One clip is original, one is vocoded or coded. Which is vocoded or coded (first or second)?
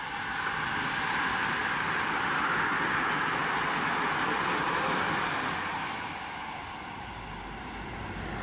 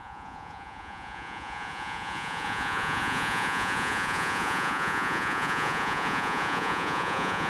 second